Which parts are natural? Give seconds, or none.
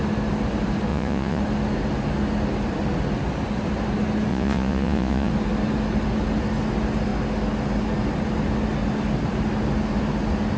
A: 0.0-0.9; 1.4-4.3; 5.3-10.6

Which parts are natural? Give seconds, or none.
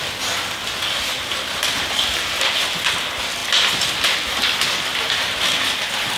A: 0.0-6.2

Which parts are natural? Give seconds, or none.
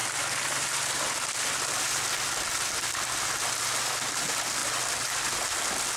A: 0.0-6.0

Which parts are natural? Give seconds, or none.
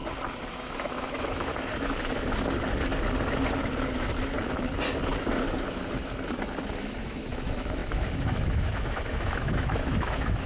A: 0.0-0.5; 1.5-6.8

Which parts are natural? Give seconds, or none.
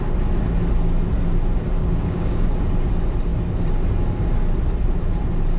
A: 0.0-1.8; 2.5-5.6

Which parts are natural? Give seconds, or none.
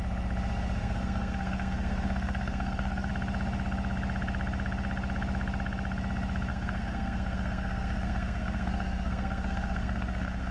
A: 0.0-0.8; 3.1-6.5